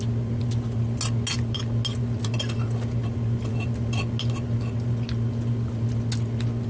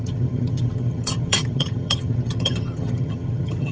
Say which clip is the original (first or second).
first